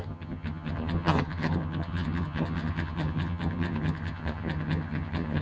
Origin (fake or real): fake